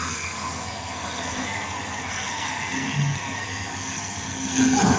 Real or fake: fake